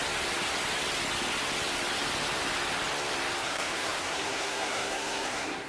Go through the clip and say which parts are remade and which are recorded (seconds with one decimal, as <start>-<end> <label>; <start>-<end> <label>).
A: 0.0-3.4 recorded; 3.4-5.7 remade